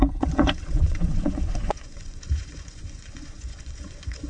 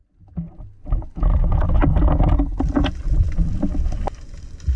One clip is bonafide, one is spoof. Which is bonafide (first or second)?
second